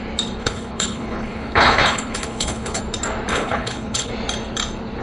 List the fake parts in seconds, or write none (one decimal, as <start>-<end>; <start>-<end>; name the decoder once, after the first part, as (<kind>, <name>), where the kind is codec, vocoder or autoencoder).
0.4-2.8 (codec, HILCodec); 3.3-4.1